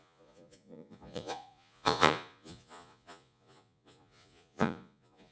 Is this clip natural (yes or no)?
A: no